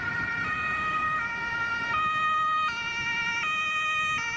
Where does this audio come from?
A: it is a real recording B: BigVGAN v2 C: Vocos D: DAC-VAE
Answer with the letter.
A